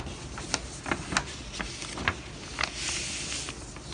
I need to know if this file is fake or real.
real